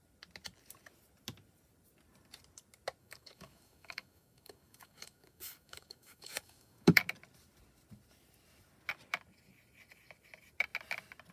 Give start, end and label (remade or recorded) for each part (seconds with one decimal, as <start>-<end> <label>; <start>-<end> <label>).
0.0-3.0 recorded; 3.0-7.0 remade; 7.0-11.3 recorded